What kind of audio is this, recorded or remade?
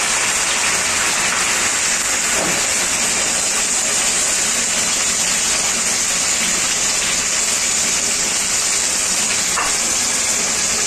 recorded